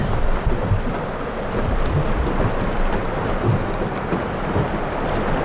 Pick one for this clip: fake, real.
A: real